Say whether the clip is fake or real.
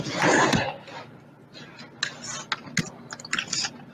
real